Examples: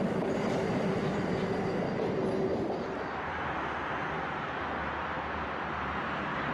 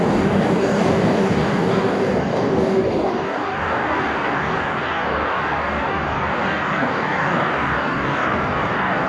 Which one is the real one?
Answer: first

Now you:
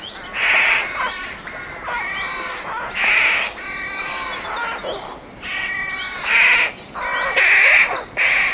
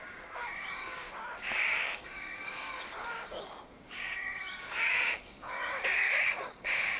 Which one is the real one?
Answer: first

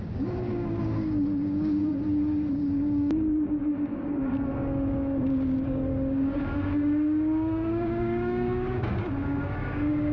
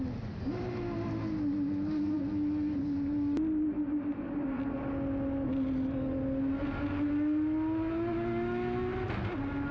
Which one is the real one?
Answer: second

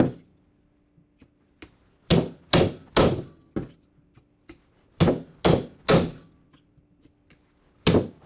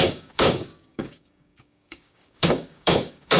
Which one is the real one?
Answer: first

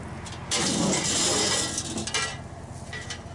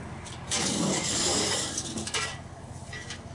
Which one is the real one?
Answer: first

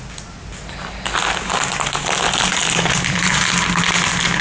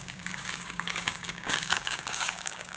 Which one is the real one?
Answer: first